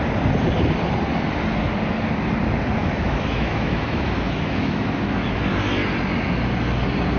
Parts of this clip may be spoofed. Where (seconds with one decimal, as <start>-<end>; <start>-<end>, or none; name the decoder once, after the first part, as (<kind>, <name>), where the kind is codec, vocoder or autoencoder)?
2.8-5.4 (autoencoder, DAC-VAE)